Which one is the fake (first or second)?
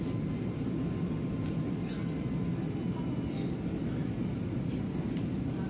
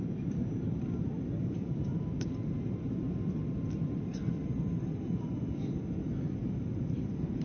second